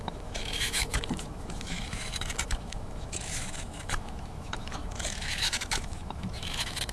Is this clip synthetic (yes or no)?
yes